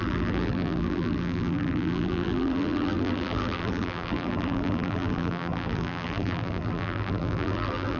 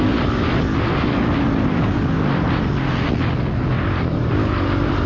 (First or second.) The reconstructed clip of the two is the first